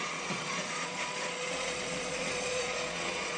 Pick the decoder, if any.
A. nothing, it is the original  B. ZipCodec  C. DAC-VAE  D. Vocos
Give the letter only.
D